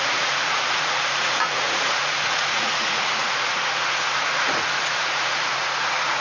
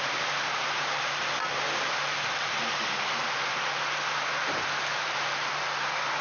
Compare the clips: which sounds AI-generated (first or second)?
first